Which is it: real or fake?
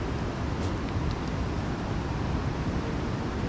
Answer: real